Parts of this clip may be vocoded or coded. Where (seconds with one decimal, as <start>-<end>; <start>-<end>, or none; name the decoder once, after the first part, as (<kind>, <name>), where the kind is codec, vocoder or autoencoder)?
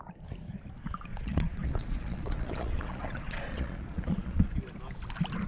1.1-4.4 (vocoder, Vocos)